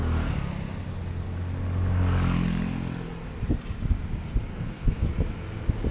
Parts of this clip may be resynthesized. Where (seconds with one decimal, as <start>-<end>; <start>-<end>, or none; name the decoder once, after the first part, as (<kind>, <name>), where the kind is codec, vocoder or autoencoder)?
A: 4.5-5.1 (codec, SNAC)